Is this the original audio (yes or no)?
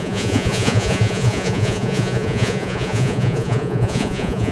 no